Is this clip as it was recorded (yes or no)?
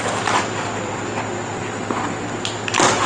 yes